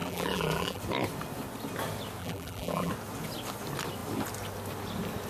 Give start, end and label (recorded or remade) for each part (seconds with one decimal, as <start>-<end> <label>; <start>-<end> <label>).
0.0-0.8 remade; 0.8-2.2 recorded; 2.2-2.9 remade; 2.9-5.3 recorded